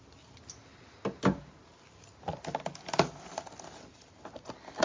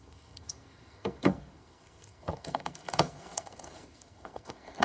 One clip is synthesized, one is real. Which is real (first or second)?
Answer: first